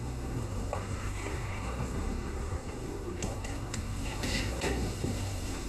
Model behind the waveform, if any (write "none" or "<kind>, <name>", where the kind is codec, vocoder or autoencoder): codec, SNAC